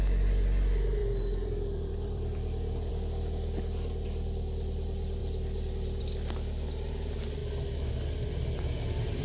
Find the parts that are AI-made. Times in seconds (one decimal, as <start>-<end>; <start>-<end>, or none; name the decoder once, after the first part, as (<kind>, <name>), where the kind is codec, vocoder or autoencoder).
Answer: 1.0-2.9 (vocoder, BigVGAN v2); 5.2-6.0